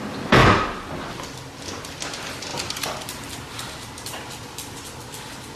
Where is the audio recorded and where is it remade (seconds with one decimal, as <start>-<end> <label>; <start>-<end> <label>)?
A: 0.0-5.6 recorded